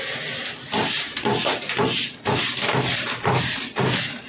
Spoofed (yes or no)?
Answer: no